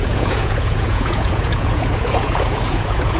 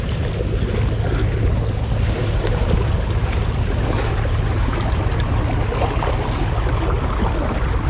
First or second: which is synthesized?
first